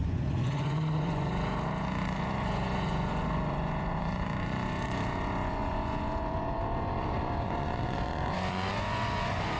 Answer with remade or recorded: remade